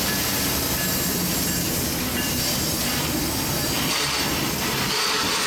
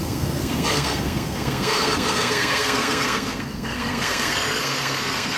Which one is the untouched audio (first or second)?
first